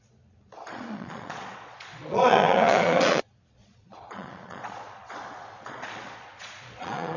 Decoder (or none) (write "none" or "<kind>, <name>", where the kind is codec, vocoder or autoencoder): vocoder, Vocos